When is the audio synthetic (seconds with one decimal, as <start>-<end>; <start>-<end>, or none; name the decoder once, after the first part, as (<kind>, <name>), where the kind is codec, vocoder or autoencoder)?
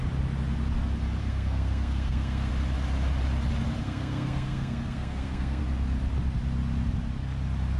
1.2-2.5 (codec, SNAC); 3.8-5.6